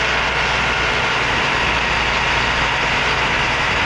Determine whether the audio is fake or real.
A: real